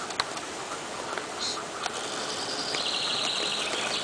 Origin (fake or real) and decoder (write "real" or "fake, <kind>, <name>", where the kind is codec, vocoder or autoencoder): real